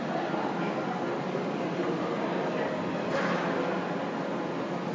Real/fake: real